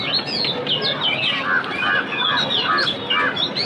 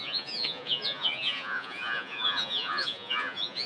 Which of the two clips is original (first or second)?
first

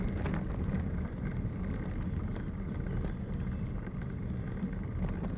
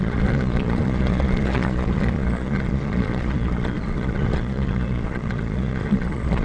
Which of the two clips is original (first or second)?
first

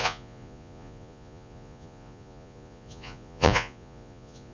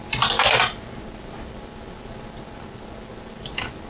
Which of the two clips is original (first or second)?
second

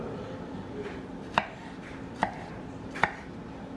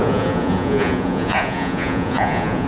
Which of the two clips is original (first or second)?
first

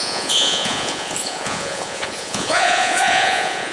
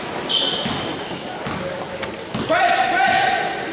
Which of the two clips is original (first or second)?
second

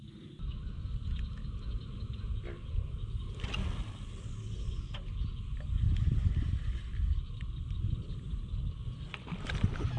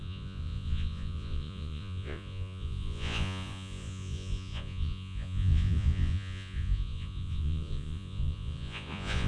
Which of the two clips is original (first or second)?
first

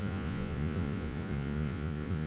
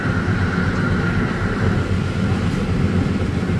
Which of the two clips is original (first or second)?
second